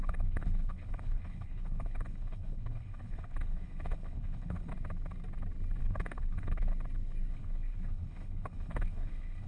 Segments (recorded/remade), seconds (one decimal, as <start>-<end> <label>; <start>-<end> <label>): 0.0-4.7 remade; 4.7-5.8 recorded; 5.8-6.7 remade; 6.7-7.3 recorded; 7.3-9.5 remade